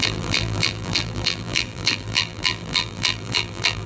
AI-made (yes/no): yes